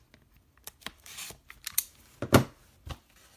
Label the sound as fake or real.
real